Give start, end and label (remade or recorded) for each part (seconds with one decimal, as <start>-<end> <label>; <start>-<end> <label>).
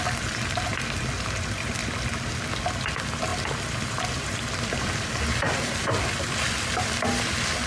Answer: 0.0-1.8 recorded; 1.8-2.6 remade; 2.6-3.3 recorded; 3.3-7.2 remade; 7.2-7.7 recorded